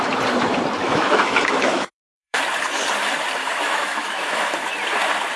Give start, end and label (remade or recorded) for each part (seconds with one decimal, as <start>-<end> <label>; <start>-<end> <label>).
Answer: 0.0-0.8 recorded; 0.8-2.4 remade; 2.4-3.4 recorded; 3.4-4.7 remade; 4.7-5.4 recorded